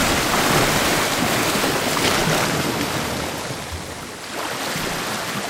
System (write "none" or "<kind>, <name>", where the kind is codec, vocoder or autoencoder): none